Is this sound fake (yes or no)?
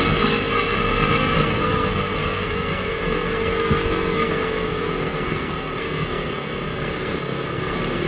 yes